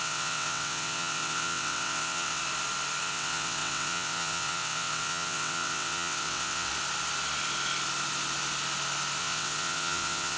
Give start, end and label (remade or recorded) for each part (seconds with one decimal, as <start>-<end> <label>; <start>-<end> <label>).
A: 0.0-2.4 remade; 2.4-3.0 recorded; 3.0-6.7 remade; 6.7-9.2 recorded; 9.2-10.4 remade